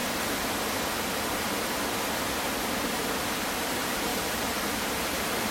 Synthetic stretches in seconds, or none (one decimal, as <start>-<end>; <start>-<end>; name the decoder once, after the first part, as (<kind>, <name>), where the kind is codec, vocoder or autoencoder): 3.3-5.5 (vocoder, BigVGAN v2)

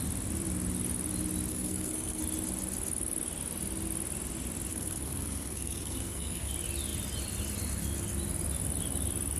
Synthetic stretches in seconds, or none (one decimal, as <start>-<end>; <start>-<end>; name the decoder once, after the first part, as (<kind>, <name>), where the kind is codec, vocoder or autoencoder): 1.5-2.2 (codec, SNAC); 4.7-6.5

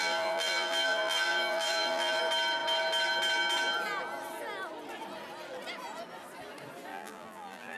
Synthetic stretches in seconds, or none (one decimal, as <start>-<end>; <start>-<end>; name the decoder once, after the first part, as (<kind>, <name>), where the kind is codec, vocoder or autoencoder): 0.0-2.2 (vocoder, BigVGAN v2); 6.9-7.8

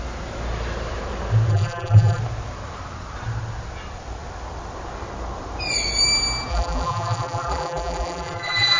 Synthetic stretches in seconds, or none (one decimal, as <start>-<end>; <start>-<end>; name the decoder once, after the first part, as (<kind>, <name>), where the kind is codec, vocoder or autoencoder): 1.5-2.2 (vocoder, BigVGAN v2); 6.5-8.8

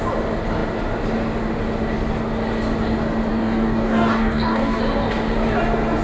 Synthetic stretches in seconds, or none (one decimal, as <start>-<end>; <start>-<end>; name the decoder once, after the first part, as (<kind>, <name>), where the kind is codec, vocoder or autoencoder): 3.3-4.8 (codec, DAC)